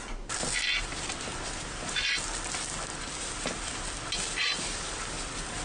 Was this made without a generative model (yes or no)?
yes